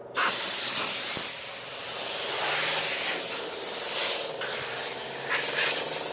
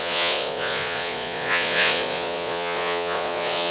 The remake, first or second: second